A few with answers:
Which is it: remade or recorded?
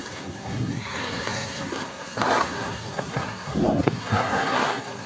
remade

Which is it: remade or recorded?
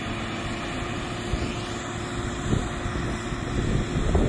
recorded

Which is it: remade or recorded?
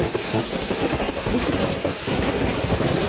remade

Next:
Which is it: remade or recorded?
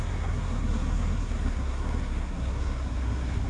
remade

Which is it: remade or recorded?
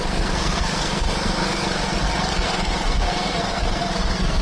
remade